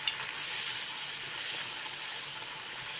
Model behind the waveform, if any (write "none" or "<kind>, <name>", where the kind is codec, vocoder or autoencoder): none